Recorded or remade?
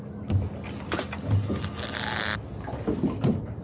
recorded